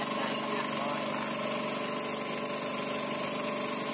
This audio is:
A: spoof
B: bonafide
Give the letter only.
B